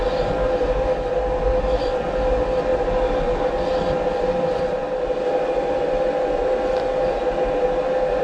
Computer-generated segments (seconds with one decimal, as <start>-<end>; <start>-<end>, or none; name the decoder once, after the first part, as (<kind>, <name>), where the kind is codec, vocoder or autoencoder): none